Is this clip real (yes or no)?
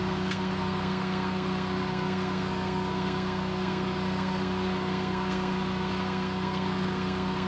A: no